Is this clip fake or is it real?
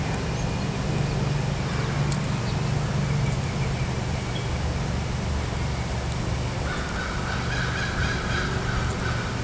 real